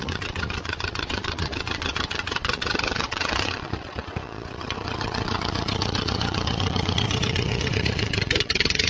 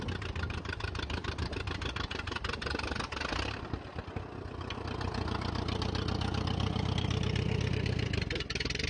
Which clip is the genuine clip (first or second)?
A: second